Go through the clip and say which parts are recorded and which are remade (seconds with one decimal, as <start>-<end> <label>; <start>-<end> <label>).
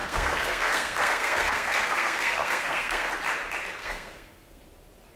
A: 0.0-3.1 remade; 3.1-3.8 recorded; 3.8-4.6 remade; 4.6-5.2 recorded